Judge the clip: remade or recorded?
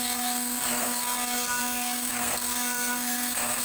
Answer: remade